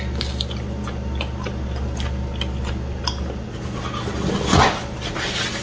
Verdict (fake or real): real